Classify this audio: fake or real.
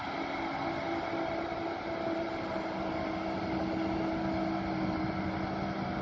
real